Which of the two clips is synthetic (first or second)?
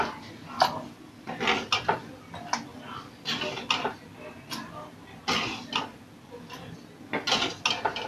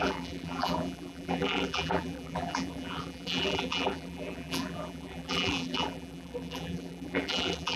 second